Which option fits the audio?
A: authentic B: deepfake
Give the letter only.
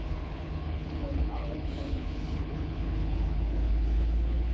B